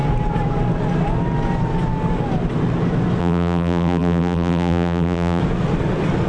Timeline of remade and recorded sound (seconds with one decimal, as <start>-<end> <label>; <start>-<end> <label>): 0.0-3.2 recorded; 3.2-5.4 remade; 5.4-6.3 recorded